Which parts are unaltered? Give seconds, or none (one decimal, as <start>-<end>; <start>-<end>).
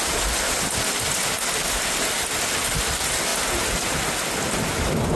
0.0-5.2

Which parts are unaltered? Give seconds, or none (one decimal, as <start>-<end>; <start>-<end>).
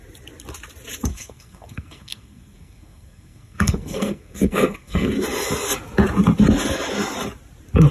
0.0-1.1; 5.1-7.9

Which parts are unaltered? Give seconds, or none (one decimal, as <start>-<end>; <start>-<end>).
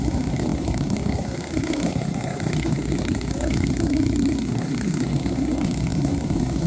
none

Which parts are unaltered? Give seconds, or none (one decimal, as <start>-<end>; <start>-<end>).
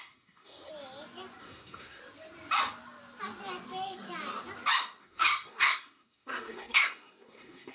0.7-1.4; 2.0-5.0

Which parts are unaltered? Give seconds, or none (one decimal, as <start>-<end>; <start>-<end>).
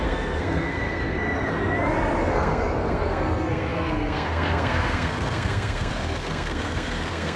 1.6-2.2